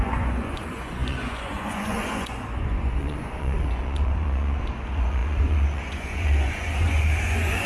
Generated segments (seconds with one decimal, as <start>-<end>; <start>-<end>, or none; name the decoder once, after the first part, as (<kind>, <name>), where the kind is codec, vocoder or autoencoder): 0.0-7.7 (vocoder, Vocos)

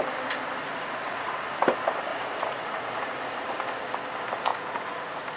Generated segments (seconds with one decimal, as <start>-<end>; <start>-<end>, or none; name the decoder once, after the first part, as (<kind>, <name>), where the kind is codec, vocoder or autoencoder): 0.6-1.5 (vocoder, Vocos); 2.1-3.5; 4.5-5.4

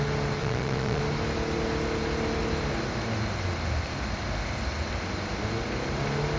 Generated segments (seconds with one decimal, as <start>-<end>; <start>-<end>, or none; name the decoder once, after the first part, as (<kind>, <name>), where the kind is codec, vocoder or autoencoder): 0.4-1.0 (vocoder, Vocos)

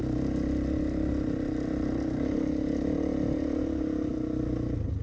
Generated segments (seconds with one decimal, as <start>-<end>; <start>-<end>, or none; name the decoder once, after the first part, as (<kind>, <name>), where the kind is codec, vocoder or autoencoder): none

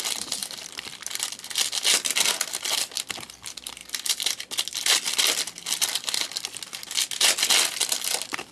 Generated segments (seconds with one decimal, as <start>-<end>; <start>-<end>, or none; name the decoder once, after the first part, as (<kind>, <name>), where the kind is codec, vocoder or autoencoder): none

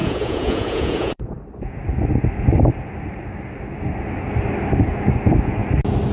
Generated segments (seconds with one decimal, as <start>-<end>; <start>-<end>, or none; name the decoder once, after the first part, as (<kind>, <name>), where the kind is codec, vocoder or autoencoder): 0.0-1.3 (vocoder, Vocos)